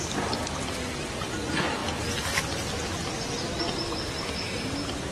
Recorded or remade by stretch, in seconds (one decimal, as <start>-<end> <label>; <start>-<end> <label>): 0.0-5.1 recorded